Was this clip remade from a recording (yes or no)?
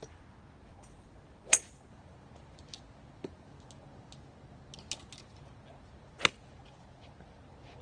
no